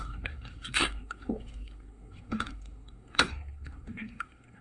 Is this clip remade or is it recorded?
remade